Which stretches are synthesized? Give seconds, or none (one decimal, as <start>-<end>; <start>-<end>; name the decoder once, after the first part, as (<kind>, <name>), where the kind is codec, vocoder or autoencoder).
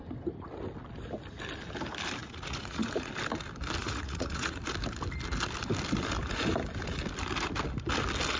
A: 2.2-3.1 (vocoder, Vocos); 3.8-4.6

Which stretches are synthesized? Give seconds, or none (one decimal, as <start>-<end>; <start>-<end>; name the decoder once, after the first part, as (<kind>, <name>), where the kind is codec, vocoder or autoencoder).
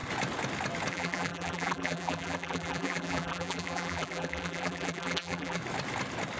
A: 0.9-5.6 (vocoder, BigVGAN v2)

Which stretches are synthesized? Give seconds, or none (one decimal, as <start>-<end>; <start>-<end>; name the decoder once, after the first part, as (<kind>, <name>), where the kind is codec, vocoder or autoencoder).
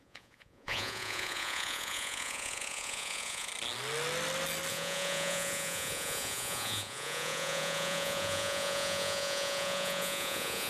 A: 0.0-3.5 (vocoder, Vocos); 4.7-10.7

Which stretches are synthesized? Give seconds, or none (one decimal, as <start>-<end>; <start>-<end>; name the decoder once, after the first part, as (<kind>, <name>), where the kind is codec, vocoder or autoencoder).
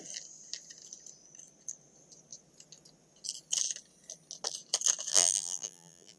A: 5.1-6.2 (vocoder, BigVGAN v2)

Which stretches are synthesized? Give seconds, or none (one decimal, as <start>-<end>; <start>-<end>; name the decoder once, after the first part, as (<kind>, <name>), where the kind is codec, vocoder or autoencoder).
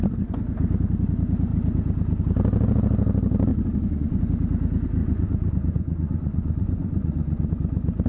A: 3.5-4.2 (vocoder, Vocos); 5.0-7.5